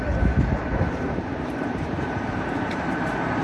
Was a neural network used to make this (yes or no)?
yes